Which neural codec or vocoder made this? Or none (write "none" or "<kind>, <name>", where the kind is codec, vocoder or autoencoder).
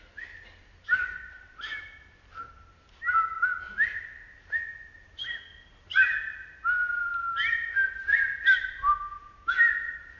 none